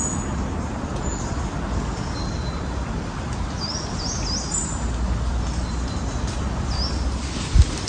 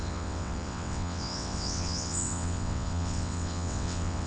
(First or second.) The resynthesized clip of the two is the second